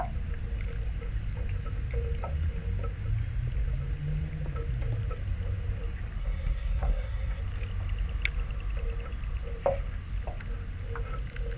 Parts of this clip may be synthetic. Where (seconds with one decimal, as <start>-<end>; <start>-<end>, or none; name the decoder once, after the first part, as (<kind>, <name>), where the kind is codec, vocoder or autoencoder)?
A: 6.2-7.4 (codec, SNAC)